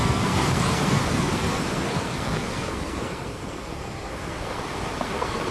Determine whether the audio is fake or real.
fake